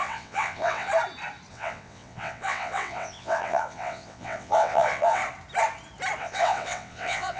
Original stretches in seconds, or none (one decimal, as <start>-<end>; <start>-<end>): 0.9-1.5; 5.2-6.2